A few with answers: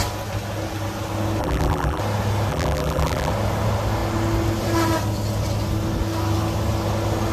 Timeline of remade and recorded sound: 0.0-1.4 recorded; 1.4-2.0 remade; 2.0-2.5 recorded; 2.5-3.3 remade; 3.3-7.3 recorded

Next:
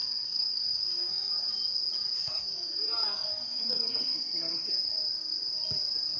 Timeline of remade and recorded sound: 0.0-1.5 remade; 1.5-2.2 recorded; 2.2-4.8 remade; 4.8-6.2 recorded

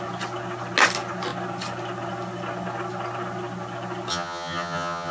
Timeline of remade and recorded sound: 0.0-4.1 recorded; 4.1-5.1 remade

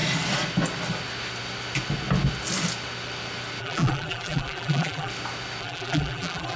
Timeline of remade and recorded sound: 0.0-3.6 recorded; 3.6-5.1 remade; 5.1-5.6 recorded; 5.6-6.6 remade